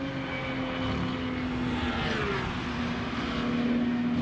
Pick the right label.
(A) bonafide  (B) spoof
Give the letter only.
A